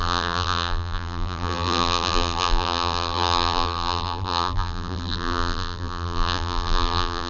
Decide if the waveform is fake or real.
fake